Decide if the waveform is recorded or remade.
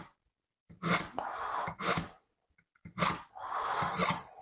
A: recorded